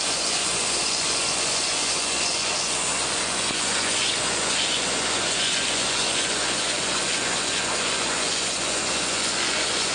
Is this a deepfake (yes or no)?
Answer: yes